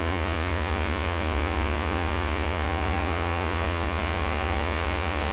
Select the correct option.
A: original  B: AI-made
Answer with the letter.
B